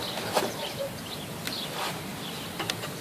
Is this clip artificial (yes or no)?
yes